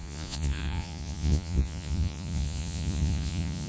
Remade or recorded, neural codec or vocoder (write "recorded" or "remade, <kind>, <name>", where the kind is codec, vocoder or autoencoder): remade, vocoder, Vocos